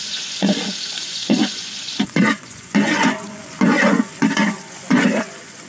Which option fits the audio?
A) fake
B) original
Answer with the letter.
A